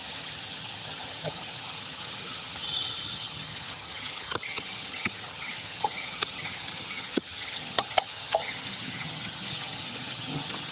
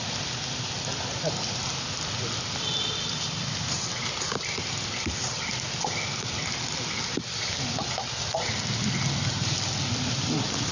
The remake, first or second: first